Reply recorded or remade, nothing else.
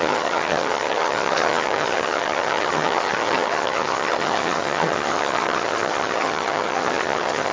remade